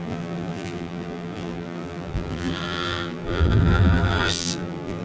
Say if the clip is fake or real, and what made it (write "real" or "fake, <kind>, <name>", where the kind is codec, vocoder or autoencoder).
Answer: fake, vocoder, BigVGAN v2